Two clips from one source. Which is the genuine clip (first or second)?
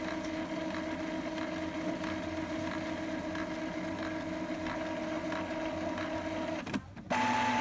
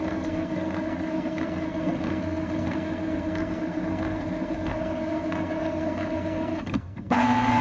first